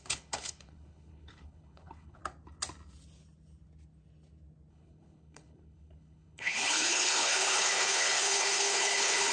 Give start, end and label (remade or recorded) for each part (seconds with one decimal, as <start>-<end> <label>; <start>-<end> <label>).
0.0-2.2 remade; 2.2-4.7 recorded; 4.7-9.3 remade